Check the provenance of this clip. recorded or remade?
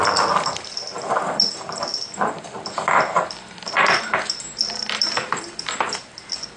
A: remade